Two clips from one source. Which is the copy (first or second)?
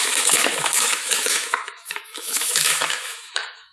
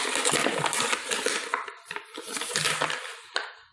first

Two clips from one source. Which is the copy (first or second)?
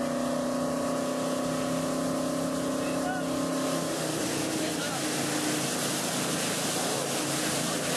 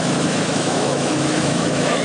second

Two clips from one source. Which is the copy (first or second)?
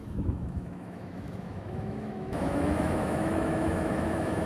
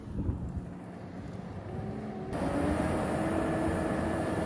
first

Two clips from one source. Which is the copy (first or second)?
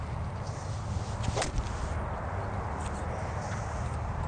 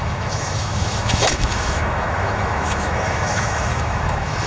second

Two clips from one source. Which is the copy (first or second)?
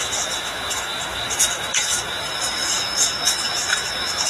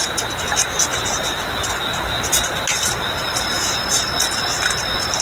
first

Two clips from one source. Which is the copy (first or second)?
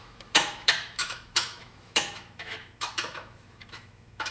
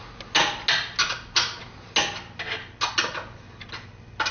first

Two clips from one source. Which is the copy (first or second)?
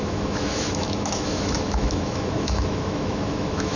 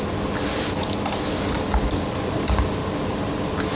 first